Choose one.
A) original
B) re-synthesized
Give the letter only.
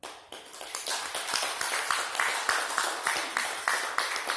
A